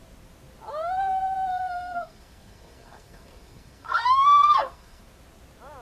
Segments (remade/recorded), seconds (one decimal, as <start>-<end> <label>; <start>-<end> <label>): 0.0-1.5 recorded; 1.5-5.0 remade; 5.0-5.8 recorded

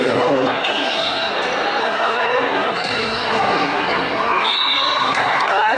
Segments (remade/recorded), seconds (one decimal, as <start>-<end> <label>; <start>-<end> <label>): 0.0-1.3 remade; 1.3-1.8 recorded; 1.8-5.8 remade

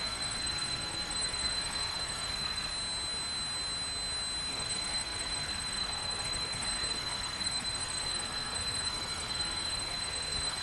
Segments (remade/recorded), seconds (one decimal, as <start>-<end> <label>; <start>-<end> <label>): 0.0-2.7 remade; 2.7-4.5 recorded; 4.5-10.6 remade

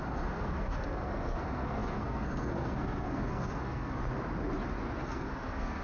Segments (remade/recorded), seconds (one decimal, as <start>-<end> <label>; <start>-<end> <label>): 0.0-4.0 remade; 4.0-5.0 recorded; 5.0-5.8 remade

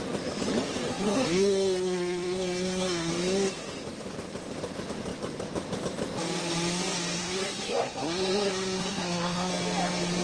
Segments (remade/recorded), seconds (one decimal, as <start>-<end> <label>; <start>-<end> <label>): 0.0-0.9 recorded; 0.9-3.1 remade; 3.1-7.2 recorded; 7.2-9.5 remade; 9.5-10.2 recorded